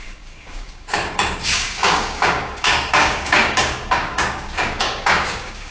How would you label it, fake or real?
fake